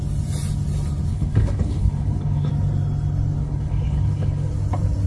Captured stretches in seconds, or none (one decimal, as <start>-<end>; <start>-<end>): 0.0-1.1; 2.5-3.4; 4.5-5.1